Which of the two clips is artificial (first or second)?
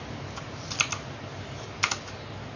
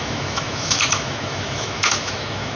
second